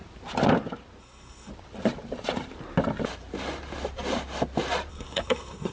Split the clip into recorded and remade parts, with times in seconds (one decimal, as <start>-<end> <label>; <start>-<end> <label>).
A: 0.0-1.0 recorded; 1.0-1.5 remade; 1.5-4.9 recorded; 4.9-5.7 remade